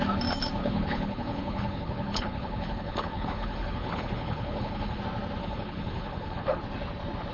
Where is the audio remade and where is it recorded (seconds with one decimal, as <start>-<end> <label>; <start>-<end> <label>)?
0.0-0.6 recorded; 0.6-5.0 remade; 5.0-5.4 recorded; 5.4-6.6 remade; 6.6-7.3 recorded